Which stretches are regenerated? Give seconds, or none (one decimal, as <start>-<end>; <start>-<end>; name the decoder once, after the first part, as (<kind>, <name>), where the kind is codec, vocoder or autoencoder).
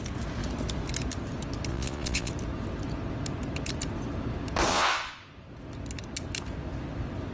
1.7-2.3 (vocoder, Vocos); 4.7-5.2